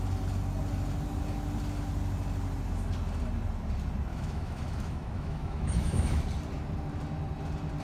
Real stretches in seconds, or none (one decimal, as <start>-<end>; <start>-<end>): 0.0-4.1; 6.2-7.8